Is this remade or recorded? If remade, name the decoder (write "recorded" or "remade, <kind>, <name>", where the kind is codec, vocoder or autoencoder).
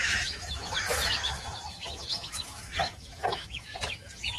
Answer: remade, autoencoder, DAC-VAE